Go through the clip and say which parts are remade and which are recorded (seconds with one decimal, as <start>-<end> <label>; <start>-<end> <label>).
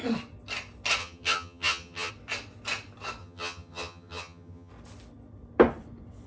0.0-1.0 recorded; 1.0-2.1 remade; 2.1-3.2 recorded; 3.2-4.7 remade; 4.7-6.3 recorded